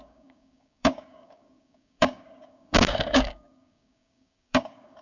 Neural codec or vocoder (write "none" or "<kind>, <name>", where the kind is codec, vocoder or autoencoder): codec, DAC